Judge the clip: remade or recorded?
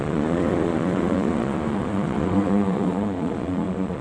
remade